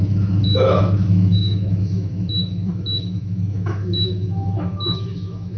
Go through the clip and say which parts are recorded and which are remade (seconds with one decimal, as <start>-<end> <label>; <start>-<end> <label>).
0.0-5.6 remade